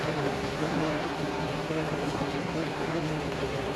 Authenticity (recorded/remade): remade